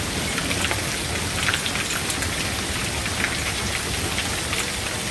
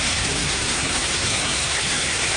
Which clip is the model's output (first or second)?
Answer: second